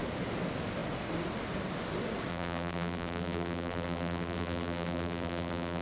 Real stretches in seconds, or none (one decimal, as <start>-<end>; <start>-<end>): 0.0-2.3